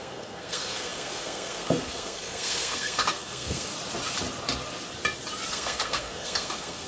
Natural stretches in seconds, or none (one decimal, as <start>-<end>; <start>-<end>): 3.7-5.5